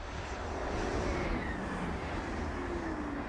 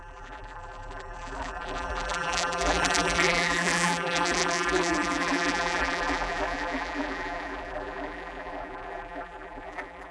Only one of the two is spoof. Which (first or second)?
second